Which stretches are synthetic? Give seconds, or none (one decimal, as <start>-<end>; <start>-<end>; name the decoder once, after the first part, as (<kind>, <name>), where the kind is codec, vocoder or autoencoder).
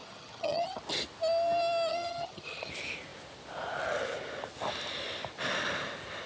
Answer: 0.0-0.8 (vocoder, HiFi-GAN); 1.9-2.7